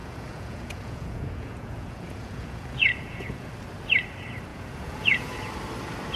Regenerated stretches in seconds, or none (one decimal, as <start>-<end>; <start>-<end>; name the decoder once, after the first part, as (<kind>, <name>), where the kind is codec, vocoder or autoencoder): 0.0-3.5 (vocoder, Vocos); 4.5-5.3